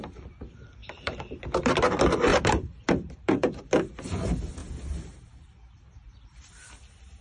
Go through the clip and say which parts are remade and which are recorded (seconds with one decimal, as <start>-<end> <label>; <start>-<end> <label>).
0.0-0.8 recorded; 0.8-1.7 remade; 1.7-2.3 recorded; 2.3-3.6 remade; 3.6-7.2 recorded